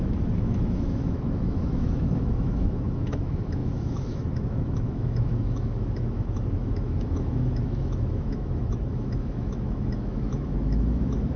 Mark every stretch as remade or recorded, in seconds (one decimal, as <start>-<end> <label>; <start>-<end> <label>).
0.0-11.4 remade